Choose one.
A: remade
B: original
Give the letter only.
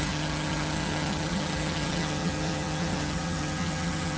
A